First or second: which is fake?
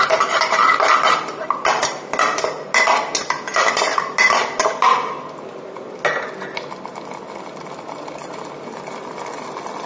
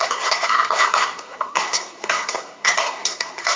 second